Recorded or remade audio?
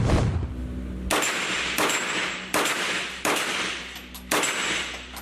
recorded